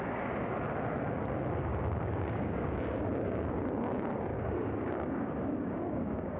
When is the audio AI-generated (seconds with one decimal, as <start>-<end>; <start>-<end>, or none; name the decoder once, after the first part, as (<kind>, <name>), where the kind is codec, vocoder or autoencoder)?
1.7-3.5 (codec, DAC); 4.3-6.4